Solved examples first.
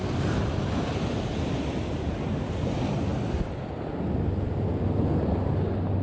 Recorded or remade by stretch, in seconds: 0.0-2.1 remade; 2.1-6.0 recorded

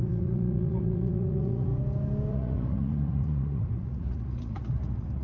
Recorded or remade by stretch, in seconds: 0.0-1.7 remade; 1.7-2.3 recorded; 2.3-5.2 remade